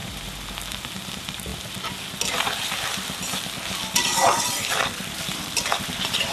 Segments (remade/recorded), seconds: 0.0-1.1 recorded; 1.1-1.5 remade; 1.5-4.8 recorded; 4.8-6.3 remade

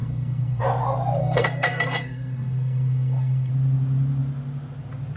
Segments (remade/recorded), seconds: 0.0-0.6 remade; 0.6-1.2 recorded; 1.2-3.5 remade; 3.5-5.2 recorded